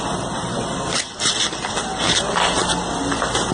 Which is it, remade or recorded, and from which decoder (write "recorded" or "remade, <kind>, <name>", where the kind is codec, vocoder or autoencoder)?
recorded